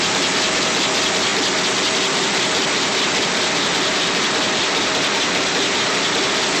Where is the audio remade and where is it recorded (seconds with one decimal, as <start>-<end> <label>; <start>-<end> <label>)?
0.0-6.6 recorded